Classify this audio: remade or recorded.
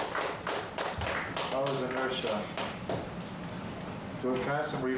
recorded